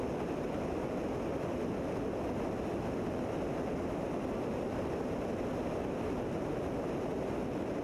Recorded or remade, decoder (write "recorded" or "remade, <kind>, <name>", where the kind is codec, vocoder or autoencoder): recorded